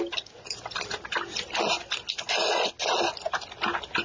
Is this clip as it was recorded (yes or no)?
yes